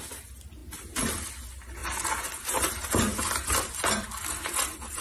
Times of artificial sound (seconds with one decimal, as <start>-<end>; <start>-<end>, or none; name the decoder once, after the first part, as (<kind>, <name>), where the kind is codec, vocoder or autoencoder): none